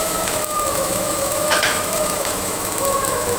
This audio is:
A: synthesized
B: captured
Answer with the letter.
A